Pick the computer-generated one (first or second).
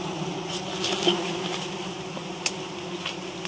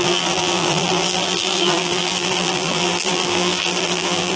second